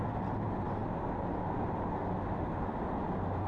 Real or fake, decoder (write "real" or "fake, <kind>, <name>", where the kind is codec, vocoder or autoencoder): real